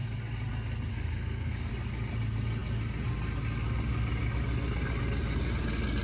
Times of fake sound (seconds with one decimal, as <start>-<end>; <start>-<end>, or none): 0.9-1.7